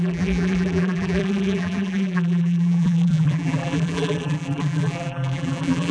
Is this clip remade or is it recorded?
remade